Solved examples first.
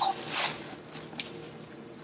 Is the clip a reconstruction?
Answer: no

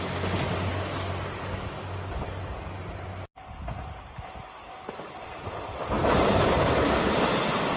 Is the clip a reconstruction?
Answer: no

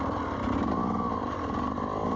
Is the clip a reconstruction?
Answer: no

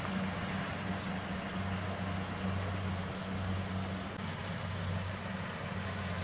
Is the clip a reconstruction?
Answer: no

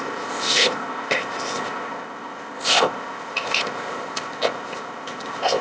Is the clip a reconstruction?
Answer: yes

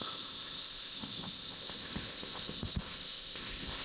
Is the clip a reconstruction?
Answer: yes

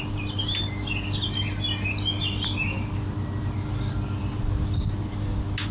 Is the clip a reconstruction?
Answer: no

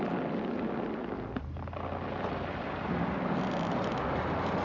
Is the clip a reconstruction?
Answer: no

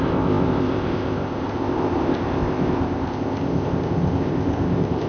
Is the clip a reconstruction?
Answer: yes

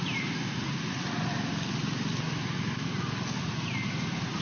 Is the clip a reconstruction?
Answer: no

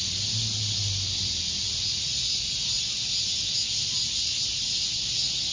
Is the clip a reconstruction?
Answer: no